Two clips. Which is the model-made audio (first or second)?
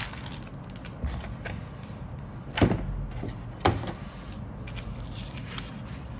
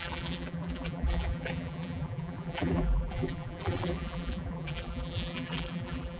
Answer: second